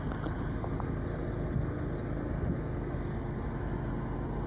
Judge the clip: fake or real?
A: real